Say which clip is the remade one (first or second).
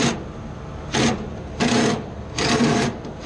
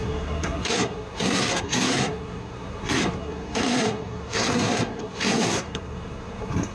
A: second